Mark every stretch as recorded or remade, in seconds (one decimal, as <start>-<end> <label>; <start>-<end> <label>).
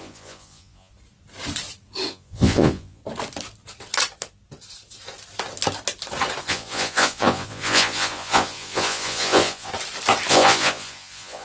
0.0-0.9 remade; 0.9-2.1 recorded; 2.1-3.0 remade; 3.0-6.4 recorded; 6.4-9.7 remade; 9.7-10.3 recorded; 10.3-11.4 remade